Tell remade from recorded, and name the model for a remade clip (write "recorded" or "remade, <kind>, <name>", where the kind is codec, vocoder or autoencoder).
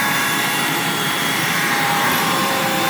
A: remade, vocoder, BigVGAN v2